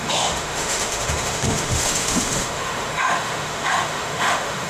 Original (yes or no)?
no